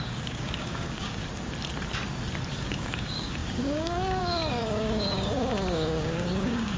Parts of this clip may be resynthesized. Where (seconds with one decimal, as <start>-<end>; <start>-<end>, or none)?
0.0-1.2; 2.6-6.8